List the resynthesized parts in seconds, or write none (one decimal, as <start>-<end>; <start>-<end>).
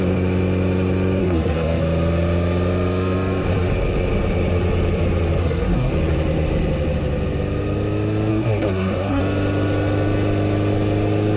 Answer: 1.2-1.8; 5.4-5.9; 8.3-9.2